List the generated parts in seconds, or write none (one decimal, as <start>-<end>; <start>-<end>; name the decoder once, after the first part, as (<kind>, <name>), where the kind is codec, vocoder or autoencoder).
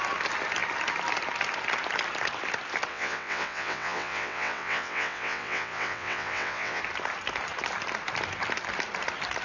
2.9-6.8 (vocoder, WaveNeXt)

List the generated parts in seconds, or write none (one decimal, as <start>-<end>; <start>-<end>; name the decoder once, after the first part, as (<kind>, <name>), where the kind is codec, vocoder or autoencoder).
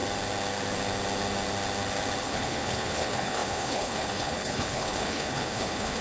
2.2-6.0 (codec, HILCodec)